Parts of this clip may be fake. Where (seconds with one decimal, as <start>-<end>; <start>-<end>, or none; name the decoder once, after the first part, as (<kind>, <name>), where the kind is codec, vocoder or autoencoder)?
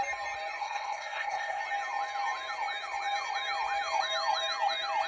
0.6-1.6 (codec, SNAC)